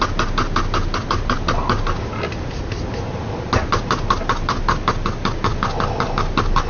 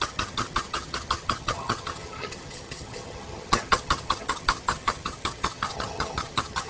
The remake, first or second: second